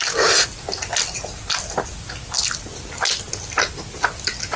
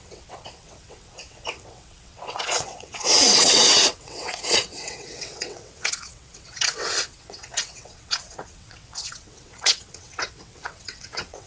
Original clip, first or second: first